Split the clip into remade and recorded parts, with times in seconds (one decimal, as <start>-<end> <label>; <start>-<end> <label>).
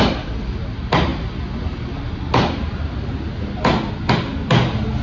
0.0-5.0 recorded